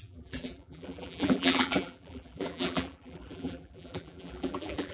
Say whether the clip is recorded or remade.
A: remade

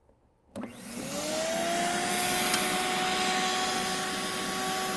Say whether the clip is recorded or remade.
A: recorded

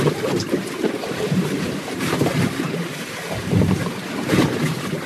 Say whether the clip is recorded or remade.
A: remade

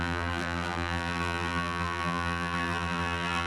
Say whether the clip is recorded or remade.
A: remade